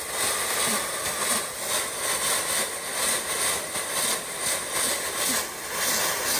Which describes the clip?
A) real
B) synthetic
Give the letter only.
A